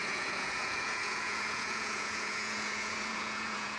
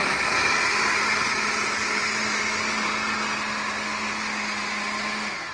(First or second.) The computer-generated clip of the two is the first